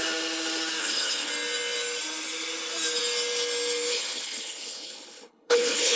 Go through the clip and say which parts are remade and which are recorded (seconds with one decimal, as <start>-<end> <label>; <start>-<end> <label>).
0.0-0.8 recorded; 0.8-1.3 remade; 1.3-3.9 recorded; 3.9-6.0 remade